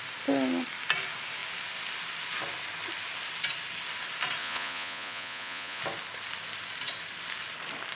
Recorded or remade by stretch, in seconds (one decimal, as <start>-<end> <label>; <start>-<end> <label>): 0.0-4.4 recorded; 4.4-5.8 remade; 5.8-8.0 recorded